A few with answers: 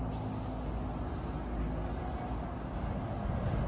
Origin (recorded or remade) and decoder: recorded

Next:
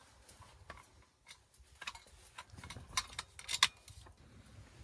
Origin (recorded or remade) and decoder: recorded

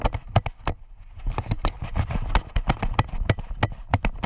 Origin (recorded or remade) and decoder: recorded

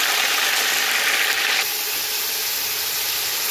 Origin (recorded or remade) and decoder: remade, vocoder, BigVGAN v2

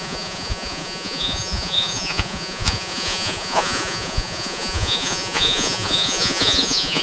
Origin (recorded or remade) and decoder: remade, vocoder, Vocos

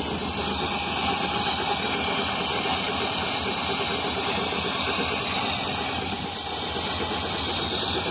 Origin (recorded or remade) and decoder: recorded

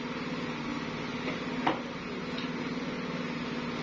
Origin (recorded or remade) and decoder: recorded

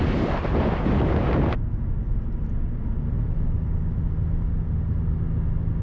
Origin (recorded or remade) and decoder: recorded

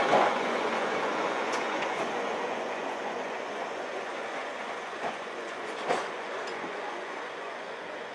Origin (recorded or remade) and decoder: remade, vocoder, Vocos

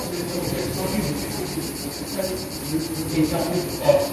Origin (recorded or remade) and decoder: recorded